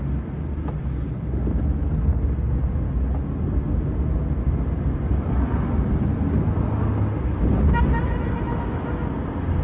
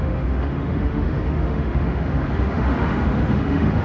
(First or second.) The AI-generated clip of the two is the second